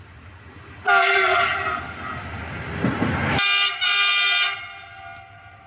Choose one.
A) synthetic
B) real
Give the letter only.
B